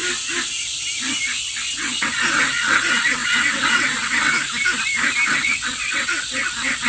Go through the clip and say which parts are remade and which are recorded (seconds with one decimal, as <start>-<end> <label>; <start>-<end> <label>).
0.0-1.4 recorded; 1.4-4.4 remade; 4.4-5.3 recorded; 5.3-6.9 remade